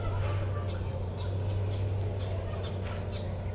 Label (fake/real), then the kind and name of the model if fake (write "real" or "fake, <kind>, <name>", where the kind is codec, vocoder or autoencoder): real